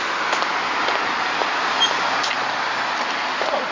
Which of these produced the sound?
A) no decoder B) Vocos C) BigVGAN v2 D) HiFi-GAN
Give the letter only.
C